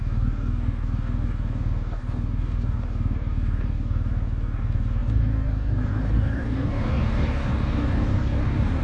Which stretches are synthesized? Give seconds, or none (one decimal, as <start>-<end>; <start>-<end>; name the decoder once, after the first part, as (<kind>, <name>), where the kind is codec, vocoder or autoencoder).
0.0-8.8 (codec, DAC)